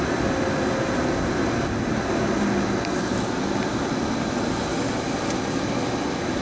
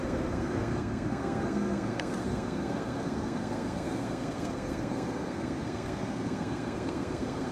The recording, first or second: first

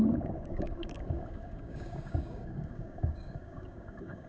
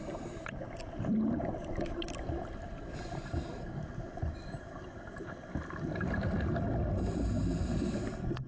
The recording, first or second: second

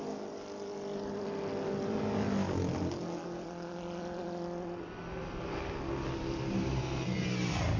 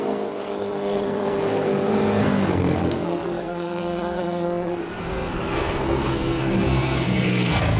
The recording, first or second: first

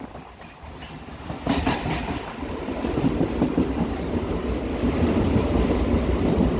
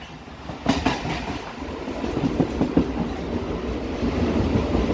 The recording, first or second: second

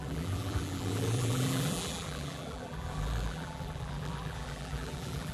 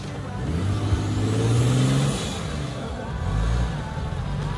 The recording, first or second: second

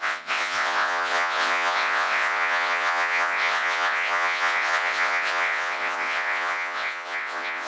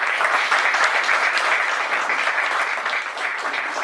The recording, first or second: second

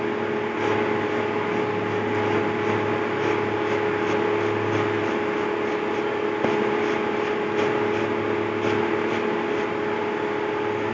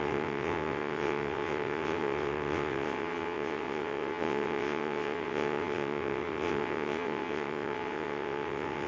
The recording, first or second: first